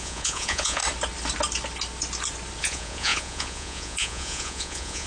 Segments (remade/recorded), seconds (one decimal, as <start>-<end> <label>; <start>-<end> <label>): 0.0-0.8 remade; 0.8-2.6 recorded; 2.6-5.1 remade